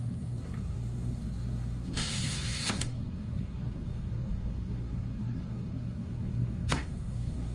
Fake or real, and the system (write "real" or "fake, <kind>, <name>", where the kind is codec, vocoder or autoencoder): fake, codec, SNAC